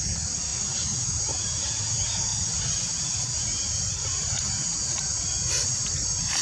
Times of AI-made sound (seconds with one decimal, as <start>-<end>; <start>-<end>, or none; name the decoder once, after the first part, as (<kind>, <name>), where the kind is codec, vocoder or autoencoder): none